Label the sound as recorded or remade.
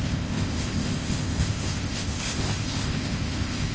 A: remade